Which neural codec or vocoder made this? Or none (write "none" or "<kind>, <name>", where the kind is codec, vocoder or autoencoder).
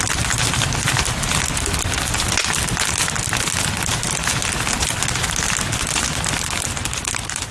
none